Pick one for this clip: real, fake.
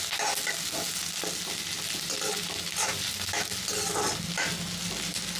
real